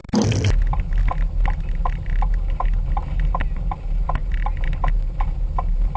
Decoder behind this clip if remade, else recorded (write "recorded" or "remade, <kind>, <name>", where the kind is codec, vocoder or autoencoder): recorded